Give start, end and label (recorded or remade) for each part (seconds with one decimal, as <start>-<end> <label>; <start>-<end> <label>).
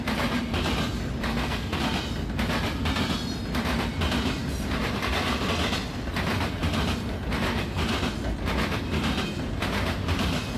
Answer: 0.0-1.3 recorded; 1.3-1.8 remade; 1.8-10.6 recorded